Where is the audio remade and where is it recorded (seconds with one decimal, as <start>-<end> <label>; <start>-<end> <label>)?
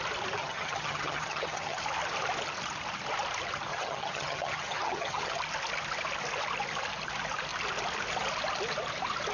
0.0-0.4 recorded; 0.4-1.8 remade; 1.8-3.7 recorded; 3.7-5.4 remade; 5.4-9.3 recorded